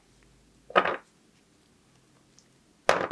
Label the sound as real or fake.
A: real